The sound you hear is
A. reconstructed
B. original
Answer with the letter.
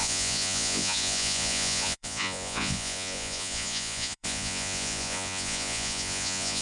A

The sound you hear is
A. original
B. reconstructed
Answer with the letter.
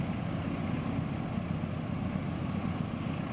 A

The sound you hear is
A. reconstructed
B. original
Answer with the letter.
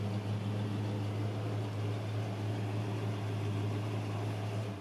B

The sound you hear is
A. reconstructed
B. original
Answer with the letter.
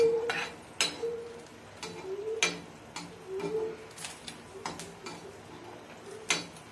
B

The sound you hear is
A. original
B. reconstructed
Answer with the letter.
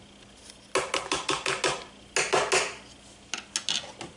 A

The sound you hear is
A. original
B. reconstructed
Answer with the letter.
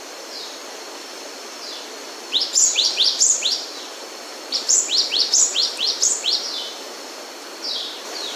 B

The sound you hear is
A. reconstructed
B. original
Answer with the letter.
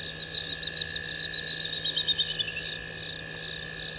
B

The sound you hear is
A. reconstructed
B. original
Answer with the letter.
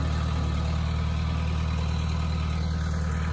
B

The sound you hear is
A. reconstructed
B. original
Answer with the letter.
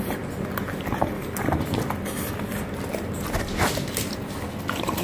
B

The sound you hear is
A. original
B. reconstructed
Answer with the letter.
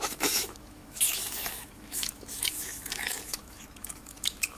B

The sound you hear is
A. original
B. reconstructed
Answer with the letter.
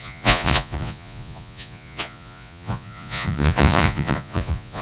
B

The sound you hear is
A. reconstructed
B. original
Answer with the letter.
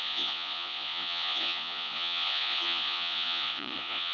A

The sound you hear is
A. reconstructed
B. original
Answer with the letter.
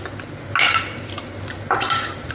B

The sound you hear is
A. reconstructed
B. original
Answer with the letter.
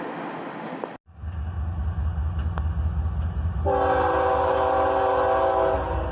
B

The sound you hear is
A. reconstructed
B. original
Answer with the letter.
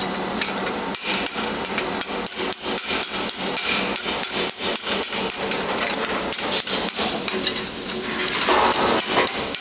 B